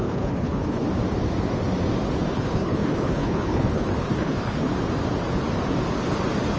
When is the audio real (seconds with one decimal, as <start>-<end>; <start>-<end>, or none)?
0.9-2.3; 4.7-6.6